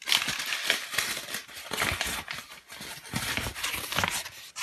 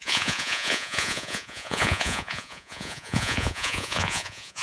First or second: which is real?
first